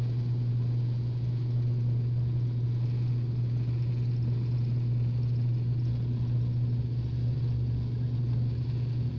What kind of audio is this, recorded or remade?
recorded